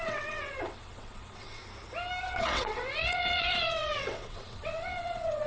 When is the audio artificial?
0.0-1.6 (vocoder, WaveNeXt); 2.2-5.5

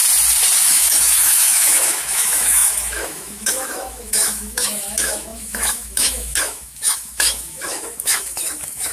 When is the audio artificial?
0.6-8.9 (autoencoder, DAC-VAE)

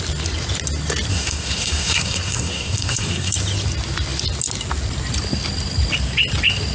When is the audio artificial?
1.1-3.3 (codec, SNAC)

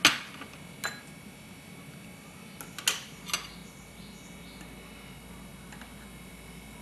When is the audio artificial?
none

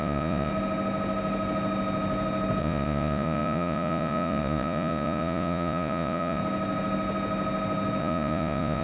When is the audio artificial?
0.0-0.5 (vocoder, Vocos); 2.6-6.4; 8.0-8.8

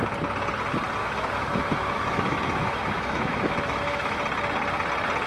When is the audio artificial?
1.0-4.2 (autoencoder, DAC-VAE)